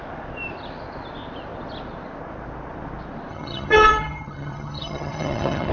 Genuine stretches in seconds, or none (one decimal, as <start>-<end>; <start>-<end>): 0.0-3.3

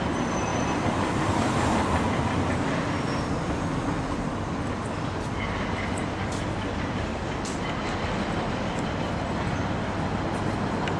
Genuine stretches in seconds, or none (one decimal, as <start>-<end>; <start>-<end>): 0.0-11.0

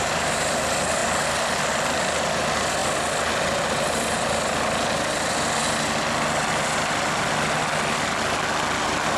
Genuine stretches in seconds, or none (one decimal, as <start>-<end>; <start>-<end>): 0.0-9.2

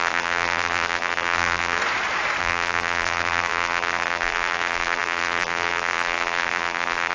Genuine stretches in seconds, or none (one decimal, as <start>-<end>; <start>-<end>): 1.8-2.4

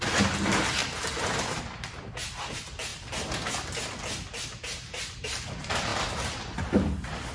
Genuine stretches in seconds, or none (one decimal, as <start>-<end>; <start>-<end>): 0.0-0.8; 1.6-7.3

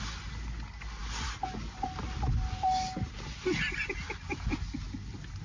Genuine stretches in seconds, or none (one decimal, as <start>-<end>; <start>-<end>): 0.0-5.4